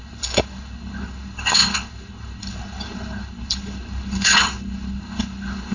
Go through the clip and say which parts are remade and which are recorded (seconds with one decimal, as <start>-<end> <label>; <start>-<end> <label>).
0.0-5.7 remade